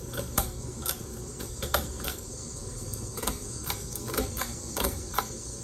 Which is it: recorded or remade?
remade